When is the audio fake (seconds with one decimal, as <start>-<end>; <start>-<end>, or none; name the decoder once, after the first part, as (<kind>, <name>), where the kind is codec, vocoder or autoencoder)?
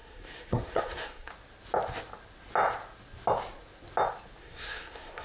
0.0-1.3 (codec, SNAC); 4.4-5.2